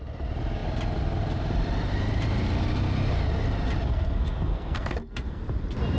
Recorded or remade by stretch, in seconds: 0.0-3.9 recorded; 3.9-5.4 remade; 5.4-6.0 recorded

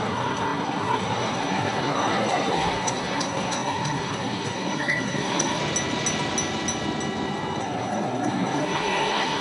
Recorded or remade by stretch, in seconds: 0.0-5.6 remade; 5.6-7.6 recorded; 7.6-9.4 remade

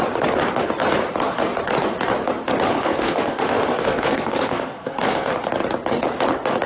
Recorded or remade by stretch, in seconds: 0.0-2.7 recorded; 2.7-5.3 remade; 5.3-6.7 recorded

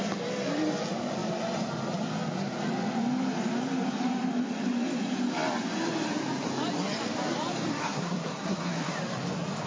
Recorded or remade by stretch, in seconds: 0.0-7.8 recorded; 7.8-8.9 remade; 8.9-9.7 recorded

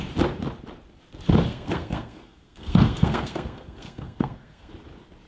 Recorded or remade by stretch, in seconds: 0.0-1.5 recorded; 1.5-4.7 remade; 4.7-5.3 recorded

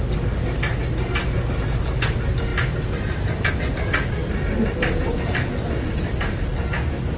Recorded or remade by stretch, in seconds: 0.0-7.2 recorded

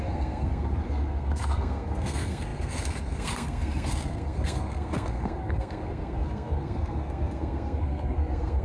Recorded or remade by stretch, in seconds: 0.0-8.6 remade

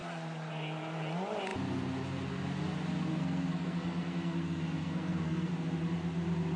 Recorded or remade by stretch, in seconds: 0.0-3.1 recorded; 3.1-5.5 remade; 5.5-6.6 recorded